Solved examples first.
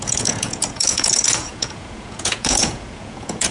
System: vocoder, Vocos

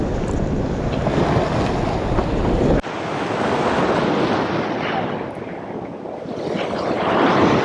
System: none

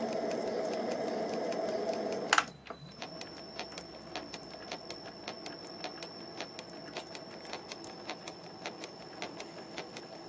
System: none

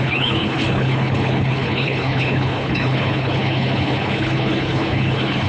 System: codec, HILCodec